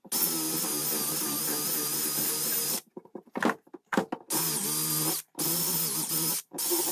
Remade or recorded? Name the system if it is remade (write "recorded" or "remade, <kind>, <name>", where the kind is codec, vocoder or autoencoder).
recorded